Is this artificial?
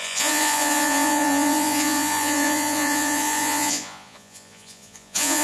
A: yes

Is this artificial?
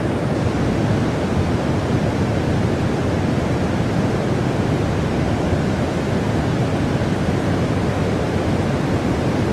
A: no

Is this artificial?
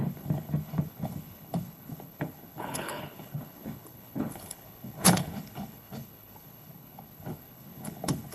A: yes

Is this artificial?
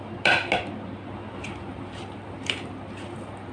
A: no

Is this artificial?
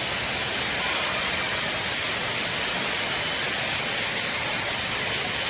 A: no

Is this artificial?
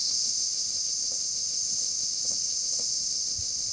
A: yes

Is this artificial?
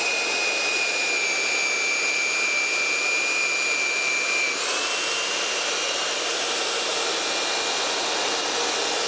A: no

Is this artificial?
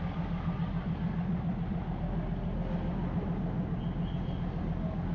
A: no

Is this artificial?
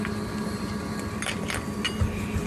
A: no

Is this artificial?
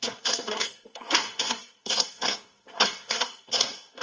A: yes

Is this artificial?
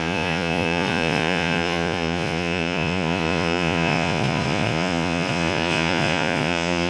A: yes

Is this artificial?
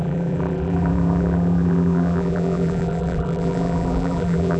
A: yes